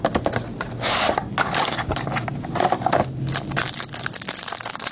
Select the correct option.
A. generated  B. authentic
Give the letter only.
B